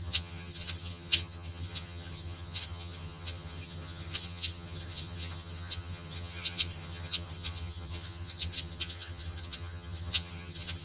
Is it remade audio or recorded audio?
remade